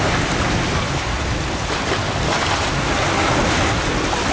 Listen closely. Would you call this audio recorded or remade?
recorded